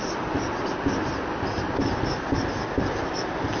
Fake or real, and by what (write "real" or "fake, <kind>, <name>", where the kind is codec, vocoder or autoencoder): real